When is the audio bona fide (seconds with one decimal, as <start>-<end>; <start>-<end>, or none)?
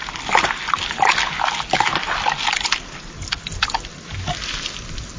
0.0-5.2